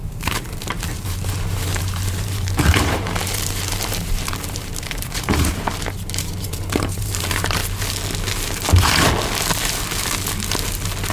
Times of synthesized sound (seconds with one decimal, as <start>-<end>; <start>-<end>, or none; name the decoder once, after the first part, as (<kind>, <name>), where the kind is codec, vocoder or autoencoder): 0.0-7.6 (vocoder, BigVGAN v2)